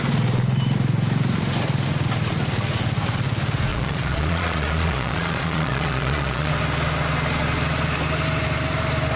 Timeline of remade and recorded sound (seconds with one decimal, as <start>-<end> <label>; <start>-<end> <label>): 0.0-3.7 recorded; 3.7-6.5 remade; 6.5-9.2 recorded